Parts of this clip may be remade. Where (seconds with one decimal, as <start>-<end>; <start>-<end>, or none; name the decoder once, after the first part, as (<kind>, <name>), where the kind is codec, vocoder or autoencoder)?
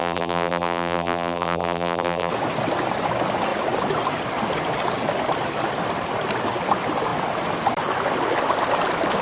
0.0-2.3 (vocoder, BigVGAN v2)